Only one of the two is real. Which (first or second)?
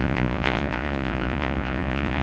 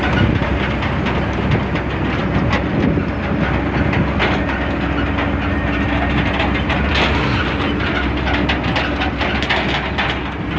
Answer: second